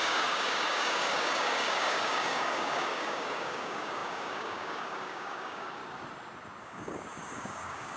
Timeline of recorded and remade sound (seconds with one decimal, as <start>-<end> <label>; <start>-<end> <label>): 0.0-5.8 remade; 5.8-6.6 recorded; 6.6-8.0 remade